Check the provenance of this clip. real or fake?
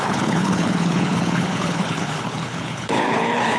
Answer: fake